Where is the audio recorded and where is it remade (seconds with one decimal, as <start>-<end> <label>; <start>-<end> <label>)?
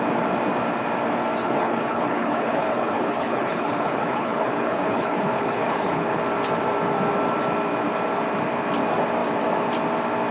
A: 0.0-1.4 recorded; 1.4-6.2 remade; 6.2-10.3 recorded